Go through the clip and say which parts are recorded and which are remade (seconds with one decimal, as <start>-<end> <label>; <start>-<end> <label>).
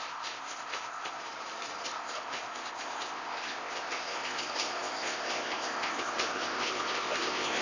0.0-1.2 remade; 1.2-1.9 recorded; 1.9-7.6 remade